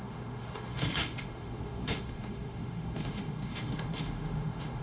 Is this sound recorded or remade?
remade